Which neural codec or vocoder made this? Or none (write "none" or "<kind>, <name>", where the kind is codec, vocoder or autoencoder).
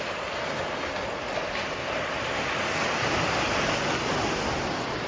none